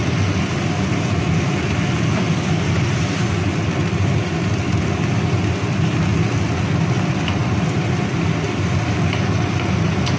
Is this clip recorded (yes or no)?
yes